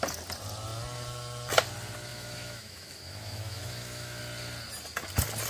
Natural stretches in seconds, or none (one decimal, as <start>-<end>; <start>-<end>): 0.0-2.1; 4.2-5.5